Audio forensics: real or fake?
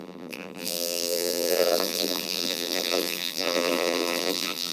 fake